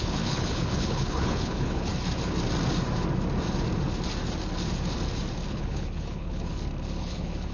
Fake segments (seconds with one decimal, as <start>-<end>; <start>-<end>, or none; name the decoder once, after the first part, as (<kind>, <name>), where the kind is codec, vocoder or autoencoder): 0.0-1.9 (codec, HILCodec); 5.5-6.5; 7.0-7.5